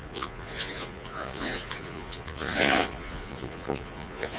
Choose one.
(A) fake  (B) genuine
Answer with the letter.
A